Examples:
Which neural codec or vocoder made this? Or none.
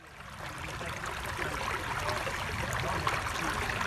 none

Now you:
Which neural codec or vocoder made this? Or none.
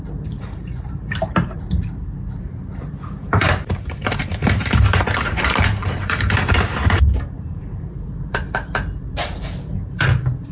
vocoder, BigVGAN v2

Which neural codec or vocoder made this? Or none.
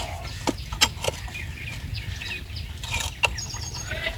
none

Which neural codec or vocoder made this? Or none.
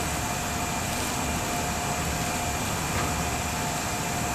none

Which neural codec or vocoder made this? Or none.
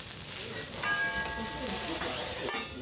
none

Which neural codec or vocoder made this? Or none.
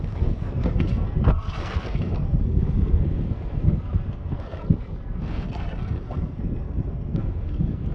codec, SNAC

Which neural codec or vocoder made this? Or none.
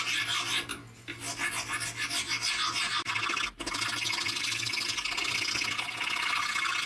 none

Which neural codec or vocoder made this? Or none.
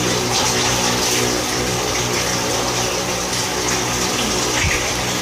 none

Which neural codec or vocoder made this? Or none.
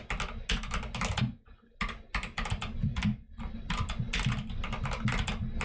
none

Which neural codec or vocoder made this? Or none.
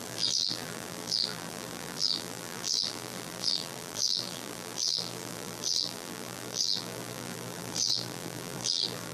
vocoder, BigVGAN v2